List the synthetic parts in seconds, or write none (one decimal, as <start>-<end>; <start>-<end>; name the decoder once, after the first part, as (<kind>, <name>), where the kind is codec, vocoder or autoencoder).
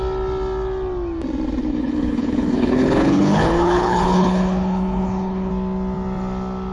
1.6-5.5 (codec, HILCodec)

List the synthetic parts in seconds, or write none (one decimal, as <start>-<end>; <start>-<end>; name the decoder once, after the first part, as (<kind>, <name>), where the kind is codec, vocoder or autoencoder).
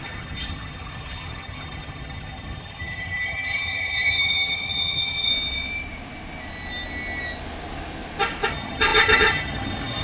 0.0-5.3 (vocoder, HiFi-GAN); 8.5-10.0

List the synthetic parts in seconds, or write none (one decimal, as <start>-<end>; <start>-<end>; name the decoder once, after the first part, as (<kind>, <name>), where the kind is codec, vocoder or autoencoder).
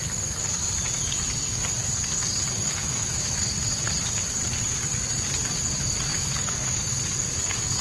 2.8-3.4 (autoencoder, DAC-VAE); 6.1-6.9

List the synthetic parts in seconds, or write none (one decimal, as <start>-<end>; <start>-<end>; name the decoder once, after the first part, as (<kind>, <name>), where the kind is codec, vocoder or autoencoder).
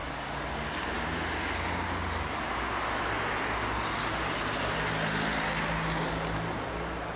none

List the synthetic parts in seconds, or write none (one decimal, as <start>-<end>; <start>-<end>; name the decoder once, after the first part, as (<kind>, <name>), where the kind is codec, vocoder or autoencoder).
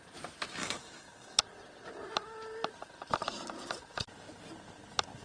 0.6-1.4 (codec, DAC)